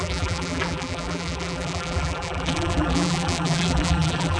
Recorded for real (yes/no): no